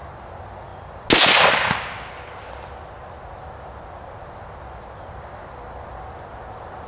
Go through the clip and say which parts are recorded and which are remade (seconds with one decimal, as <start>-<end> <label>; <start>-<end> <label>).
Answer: 0.0-6.9 recorded